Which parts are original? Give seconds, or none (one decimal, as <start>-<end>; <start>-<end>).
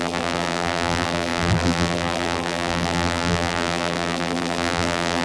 none